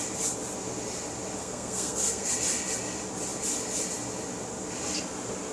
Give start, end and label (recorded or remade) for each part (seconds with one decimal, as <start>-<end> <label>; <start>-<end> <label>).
0.0-1.4 recorded; 1.4-2.3 remade; 2.3-5.5 recorded